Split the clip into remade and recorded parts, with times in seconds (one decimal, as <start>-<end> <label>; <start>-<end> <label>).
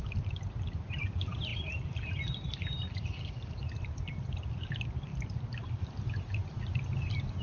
0.0-1.5 recorded; 1.5-3.3 remade; 3.3-5.1 recorded; 5.1-6.1 remade; 6.1-7.4 recorded